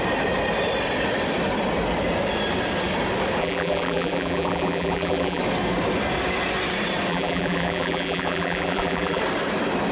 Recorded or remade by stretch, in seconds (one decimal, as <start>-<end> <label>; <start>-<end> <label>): 0.0-3.4 recorded; 3.4-5.4 remade; 5.4-7.1 recorded; 7.1-9.2 remade; 9.2-9.9 recorded